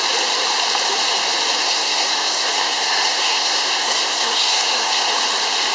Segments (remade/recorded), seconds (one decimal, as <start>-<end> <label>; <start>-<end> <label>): 0.0-1.6 recorded; 1.6-5.0 remade; 5.0-5.7 recorded